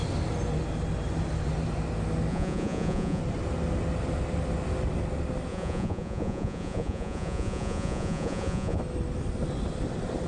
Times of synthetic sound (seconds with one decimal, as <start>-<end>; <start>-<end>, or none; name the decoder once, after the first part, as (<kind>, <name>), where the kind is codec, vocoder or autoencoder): 2.3-3.2 (vocoder, Vocos); 5.5-8.8